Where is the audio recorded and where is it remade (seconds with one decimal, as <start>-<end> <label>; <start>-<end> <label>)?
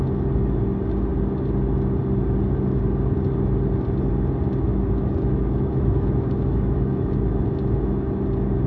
0.0-4.7 recorded; 4.7-7.4 remade; 7.4-8.7 recorded